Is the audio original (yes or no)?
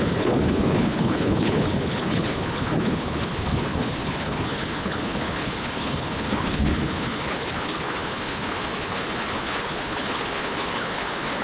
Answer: no